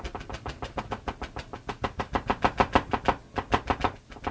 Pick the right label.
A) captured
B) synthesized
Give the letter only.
A